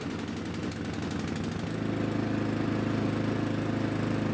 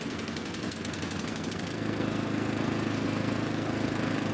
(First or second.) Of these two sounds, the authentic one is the first